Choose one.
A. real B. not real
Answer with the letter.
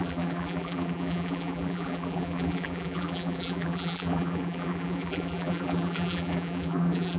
B